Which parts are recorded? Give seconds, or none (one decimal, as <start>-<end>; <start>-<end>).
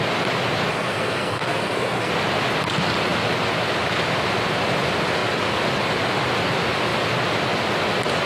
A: 0.0-0.7; 2.1-8.3